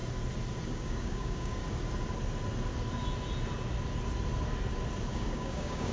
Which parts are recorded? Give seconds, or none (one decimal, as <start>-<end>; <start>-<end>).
0.0-0.7; 1.6-5.1